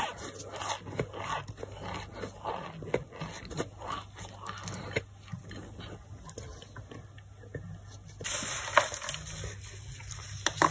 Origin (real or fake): real